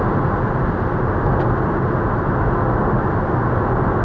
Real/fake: real